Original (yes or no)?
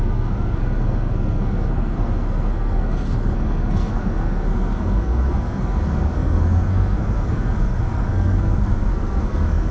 no